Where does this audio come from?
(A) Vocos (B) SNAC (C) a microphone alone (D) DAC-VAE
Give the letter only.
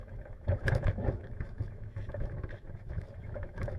D